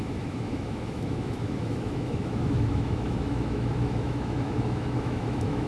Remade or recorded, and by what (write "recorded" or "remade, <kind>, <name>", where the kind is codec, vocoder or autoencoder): remade, autoencoder, DAC-VAE